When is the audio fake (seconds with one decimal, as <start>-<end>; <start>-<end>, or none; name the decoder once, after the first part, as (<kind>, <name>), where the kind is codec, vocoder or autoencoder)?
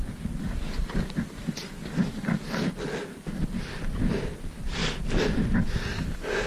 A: none